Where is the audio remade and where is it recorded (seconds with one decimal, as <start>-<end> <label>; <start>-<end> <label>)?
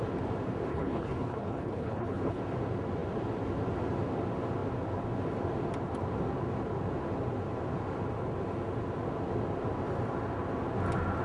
0.0-0.7 recorded; 0.7-2.4 remade; 2.4-11.2 recorded